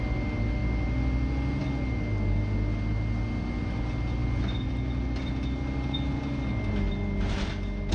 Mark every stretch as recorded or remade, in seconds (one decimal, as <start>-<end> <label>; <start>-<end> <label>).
0.0-7.9 recorded